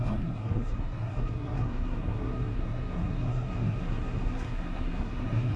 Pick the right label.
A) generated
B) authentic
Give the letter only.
A